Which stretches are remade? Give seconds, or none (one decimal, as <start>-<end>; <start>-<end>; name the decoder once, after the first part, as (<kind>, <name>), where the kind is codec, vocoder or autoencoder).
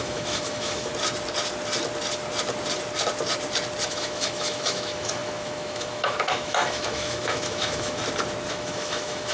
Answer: 0.0-0.9 (autoencoder, DAC-VAE); 3.9-8.0; 8.5-9.3